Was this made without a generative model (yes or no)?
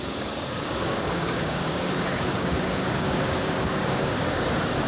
no